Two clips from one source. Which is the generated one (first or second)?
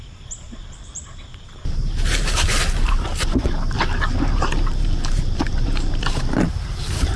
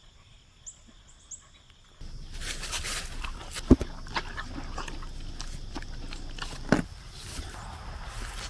first